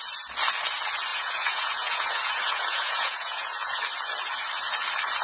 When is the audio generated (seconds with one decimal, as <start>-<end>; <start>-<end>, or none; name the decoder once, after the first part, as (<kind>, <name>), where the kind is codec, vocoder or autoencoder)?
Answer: 1.1-3.8 (vocoder, Vocos)